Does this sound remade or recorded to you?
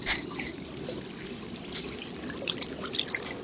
remade